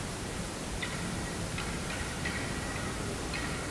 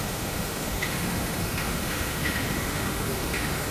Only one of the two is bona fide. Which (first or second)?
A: first